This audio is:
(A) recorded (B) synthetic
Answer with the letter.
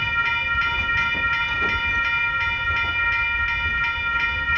A